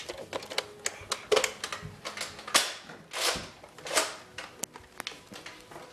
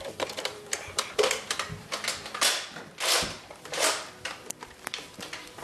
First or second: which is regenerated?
second